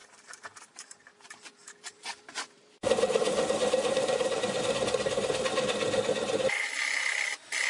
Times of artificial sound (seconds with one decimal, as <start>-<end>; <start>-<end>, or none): 0.0-4.6